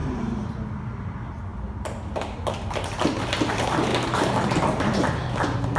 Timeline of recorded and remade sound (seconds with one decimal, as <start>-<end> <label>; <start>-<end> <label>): 0.0-3.9 recorded; 3.9-4.4 remade; 4.4-5.8 recorded